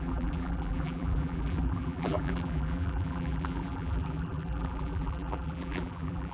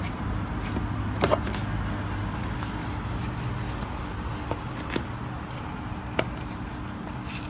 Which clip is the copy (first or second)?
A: first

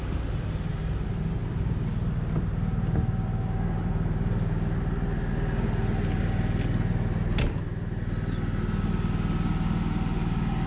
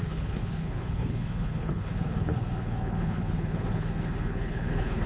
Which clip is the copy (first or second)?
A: second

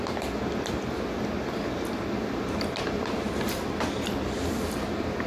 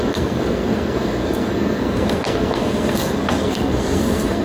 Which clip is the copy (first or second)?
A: second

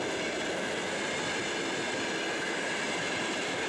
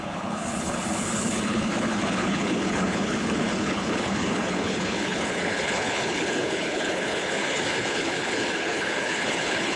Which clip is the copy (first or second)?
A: second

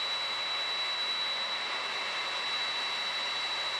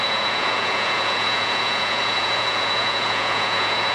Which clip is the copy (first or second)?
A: second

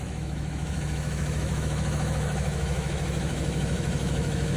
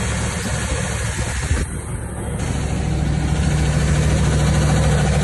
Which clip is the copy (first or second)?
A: first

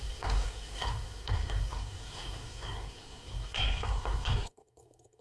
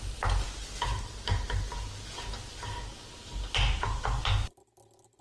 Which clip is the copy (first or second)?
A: first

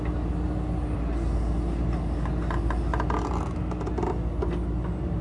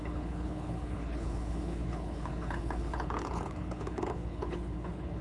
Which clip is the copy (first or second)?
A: second